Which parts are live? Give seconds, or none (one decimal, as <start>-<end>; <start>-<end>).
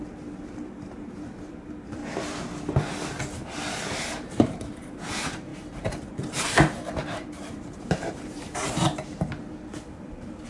2.0-3.7